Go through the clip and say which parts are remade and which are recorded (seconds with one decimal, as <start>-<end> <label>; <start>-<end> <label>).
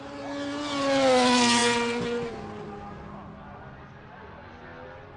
0.0-5.2 recorded